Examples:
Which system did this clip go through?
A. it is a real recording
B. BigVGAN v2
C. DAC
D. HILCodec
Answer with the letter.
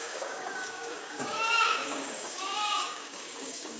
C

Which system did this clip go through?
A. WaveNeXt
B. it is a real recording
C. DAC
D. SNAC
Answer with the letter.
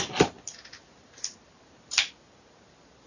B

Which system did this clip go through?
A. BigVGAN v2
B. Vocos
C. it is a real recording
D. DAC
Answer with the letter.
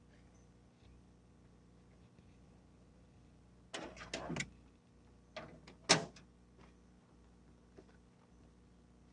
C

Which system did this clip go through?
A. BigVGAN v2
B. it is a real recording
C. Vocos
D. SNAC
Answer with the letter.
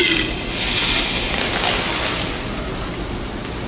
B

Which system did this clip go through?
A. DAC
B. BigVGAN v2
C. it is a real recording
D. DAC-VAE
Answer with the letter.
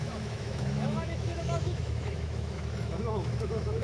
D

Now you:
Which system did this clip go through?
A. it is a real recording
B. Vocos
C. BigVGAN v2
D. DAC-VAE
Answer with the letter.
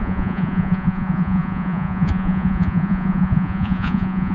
B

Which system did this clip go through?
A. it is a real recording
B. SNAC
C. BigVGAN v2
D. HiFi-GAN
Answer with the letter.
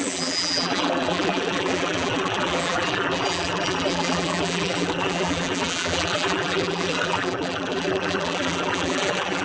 C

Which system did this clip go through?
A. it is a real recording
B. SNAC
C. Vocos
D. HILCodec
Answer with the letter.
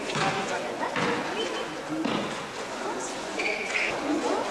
C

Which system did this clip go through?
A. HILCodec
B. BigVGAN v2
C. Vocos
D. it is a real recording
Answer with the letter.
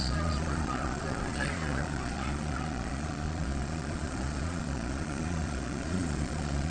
C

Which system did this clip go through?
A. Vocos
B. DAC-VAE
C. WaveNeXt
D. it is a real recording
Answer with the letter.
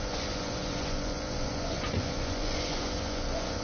A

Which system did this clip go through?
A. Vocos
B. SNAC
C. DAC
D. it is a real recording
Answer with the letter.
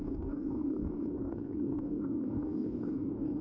C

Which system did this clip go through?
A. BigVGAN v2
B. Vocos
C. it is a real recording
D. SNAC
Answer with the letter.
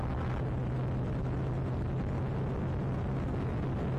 C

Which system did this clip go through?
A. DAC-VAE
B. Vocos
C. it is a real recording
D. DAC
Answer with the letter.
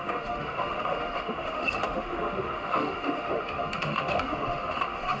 A